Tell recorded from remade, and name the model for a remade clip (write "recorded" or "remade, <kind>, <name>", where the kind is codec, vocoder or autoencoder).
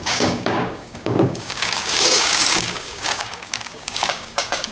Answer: remade, codec, DAC